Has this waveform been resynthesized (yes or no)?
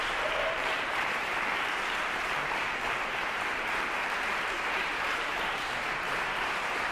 yes